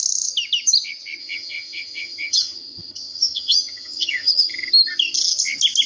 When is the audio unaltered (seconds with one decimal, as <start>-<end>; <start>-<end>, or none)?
0.0-1.2; 4.7-5.9